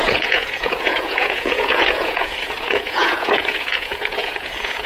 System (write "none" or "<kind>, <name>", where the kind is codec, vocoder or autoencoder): vocoder, Vocos